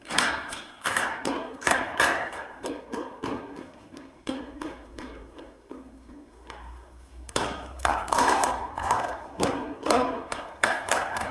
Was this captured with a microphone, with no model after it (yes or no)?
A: no